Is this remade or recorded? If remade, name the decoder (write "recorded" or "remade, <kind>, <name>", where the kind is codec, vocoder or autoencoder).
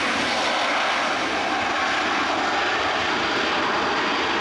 recorded